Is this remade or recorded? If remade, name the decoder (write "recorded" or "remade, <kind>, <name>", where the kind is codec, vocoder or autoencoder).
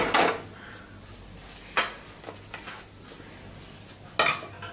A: recorded